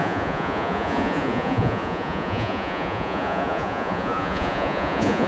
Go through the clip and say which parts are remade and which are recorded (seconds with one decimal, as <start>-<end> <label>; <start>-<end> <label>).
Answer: 0.0-5.3 remade